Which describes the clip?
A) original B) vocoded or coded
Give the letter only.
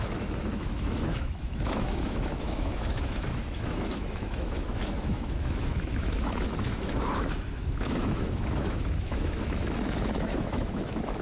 B